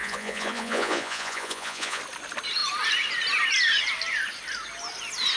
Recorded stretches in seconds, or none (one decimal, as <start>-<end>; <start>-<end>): 2.0-5.4